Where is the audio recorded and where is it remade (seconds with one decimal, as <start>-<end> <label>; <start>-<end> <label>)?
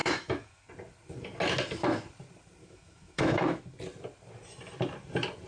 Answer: 0.0-0.7 remade; 0.7-2.6 recorded; 2.6-3.6 remade; 3.6-5.5 recorded